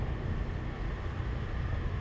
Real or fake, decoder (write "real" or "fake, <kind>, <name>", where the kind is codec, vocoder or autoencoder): real